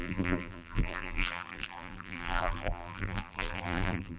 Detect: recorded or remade remade